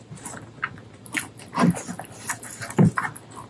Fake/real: real